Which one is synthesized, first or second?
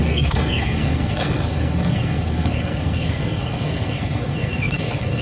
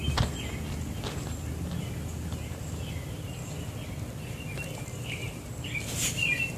first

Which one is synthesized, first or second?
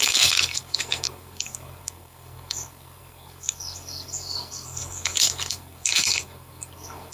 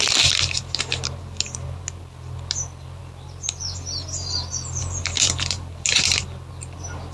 first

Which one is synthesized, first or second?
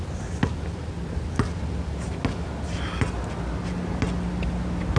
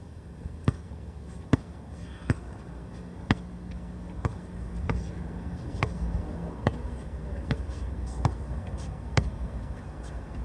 second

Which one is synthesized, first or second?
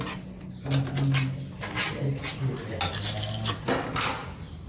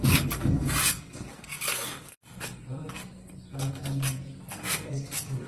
second